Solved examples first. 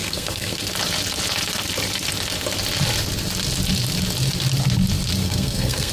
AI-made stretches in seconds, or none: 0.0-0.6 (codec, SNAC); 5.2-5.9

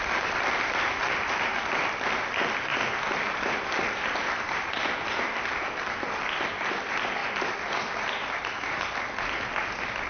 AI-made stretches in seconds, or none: 0.0-2.7 (vocoder, BigVGAN v2); 3.7-5.3; 6.1-7.2

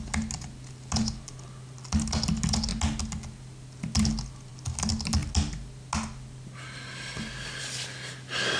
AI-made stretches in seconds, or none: none